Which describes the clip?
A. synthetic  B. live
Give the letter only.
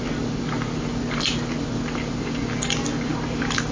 B